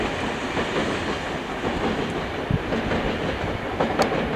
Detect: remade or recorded recorded